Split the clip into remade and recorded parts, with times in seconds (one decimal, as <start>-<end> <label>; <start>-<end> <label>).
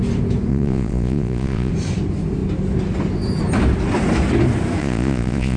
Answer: 0.0-0.5 recorded; 0.5-1.7 remade; 1.7-4.8 recorded; 4.8-5.6 remade